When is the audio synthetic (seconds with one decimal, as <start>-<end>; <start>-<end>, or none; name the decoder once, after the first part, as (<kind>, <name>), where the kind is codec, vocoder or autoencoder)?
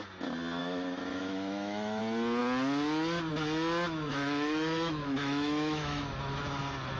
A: 0.6-2.0 (autoencoder, DAC-VAE); 4.1-6.6